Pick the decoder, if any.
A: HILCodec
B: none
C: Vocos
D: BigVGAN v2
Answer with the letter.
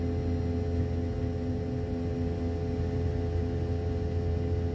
B